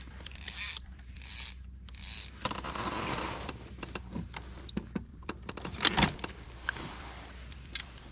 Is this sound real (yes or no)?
no